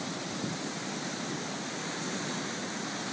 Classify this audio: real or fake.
real